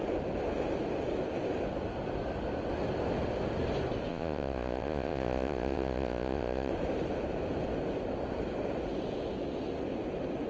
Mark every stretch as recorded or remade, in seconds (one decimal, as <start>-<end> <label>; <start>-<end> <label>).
0.0-4.1 recorded; 4.1-6.7 remade; 6.7-10.5 recorded